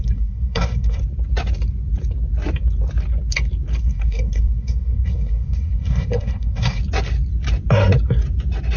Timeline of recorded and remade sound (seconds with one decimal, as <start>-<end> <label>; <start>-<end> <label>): 0.0-1.0 remade; 1.0-3.8 recorded; 3.8-6.8 remade; 6.8-8.8 recorded